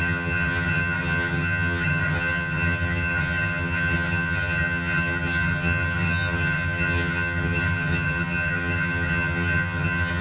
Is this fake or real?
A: fake